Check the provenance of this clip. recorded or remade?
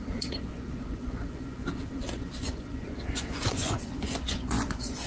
remade